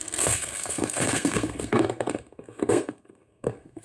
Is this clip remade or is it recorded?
remade